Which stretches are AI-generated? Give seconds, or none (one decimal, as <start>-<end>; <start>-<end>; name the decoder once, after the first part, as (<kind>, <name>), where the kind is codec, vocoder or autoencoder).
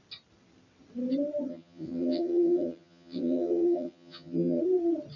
1.5-4.6 (vocoder, HiFi-GAN)